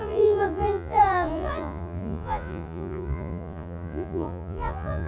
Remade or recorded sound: remade